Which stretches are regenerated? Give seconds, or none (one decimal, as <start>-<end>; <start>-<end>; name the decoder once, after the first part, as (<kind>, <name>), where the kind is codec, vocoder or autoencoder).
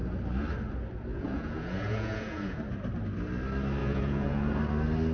1.1-2.6 (vocoder, Vocos); 3.8-4.6